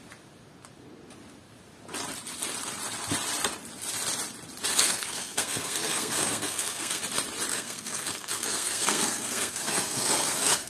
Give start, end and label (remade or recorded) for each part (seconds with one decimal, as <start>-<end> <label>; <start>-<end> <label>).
0.0-4.7 recorded; 4.7-7.0 remade; 7.0-7.5 recorded; 7.5-10.7 remade